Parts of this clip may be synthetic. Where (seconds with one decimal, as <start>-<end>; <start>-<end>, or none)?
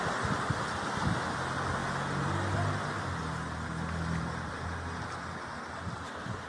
none